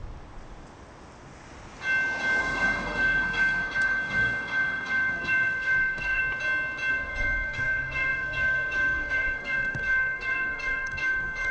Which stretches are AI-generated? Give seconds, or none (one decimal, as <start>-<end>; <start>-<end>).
2.4-6.2; 6.9-11.5